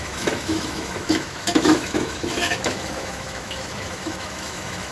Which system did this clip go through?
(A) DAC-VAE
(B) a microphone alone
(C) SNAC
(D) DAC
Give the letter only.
A